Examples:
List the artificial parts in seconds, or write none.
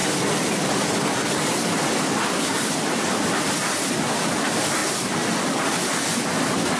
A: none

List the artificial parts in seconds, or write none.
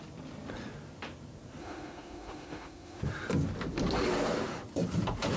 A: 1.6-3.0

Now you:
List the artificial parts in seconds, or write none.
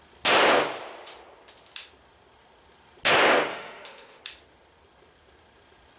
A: 3.5-4.2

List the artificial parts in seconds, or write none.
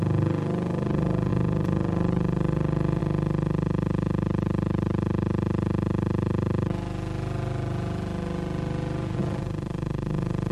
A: 1.3-3.0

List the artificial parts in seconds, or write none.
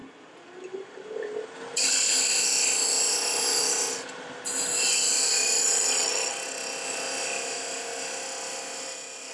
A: none